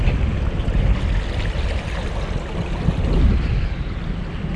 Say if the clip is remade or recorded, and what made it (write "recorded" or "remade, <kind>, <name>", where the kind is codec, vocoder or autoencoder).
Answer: recorded